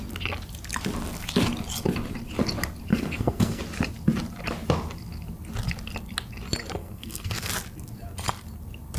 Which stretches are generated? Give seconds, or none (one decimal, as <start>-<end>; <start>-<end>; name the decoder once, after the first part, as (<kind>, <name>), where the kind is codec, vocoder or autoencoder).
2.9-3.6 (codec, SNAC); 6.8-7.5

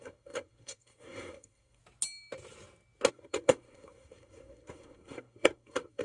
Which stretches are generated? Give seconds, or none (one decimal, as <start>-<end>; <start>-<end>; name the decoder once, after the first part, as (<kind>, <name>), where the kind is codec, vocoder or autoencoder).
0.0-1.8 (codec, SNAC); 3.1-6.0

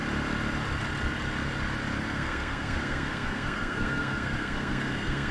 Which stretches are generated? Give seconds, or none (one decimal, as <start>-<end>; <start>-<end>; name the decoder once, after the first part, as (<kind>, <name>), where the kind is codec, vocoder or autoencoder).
2.0-5.3 (codec, SNAC)